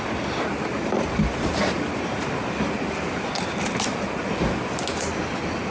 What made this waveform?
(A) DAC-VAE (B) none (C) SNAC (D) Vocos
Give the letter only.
B